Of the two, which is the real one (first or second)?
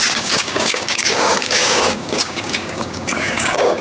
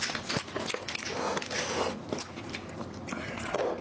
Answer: second